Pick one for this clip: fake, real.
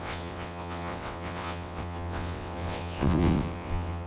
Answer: fake